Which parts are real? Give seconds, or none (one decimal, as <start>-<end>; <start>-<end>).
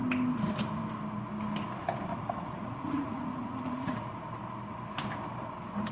0.0-2.1; 4.2-5.9